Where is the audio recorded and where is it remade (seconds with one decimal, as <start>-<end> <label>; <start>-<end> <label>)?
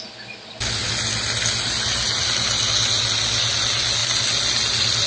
0.0-5.1 recorded